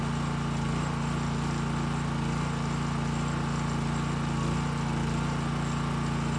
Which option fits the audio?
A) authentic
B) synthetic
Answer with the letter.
A